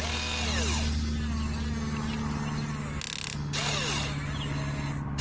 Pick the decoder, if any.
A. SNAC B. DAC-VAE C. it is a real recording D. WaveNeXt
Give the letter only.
C